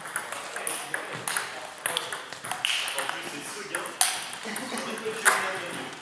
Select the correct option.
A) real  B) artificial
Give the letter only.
A